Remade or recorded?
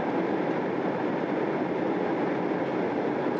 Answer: recorded